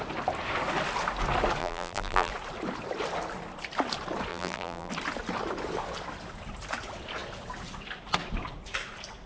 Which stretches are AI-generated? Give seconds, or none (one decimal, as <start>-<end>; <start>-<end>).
1.6-2.3; 4.3-4.9